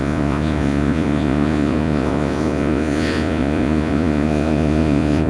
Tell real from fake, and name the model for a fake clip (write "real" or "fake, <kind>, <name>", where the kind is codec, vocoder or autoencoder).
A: fake, vocoder, Vocos